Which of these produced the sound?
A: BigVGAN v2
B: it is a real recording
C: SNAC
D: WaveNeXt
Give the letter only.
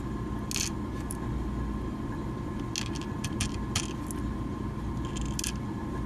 B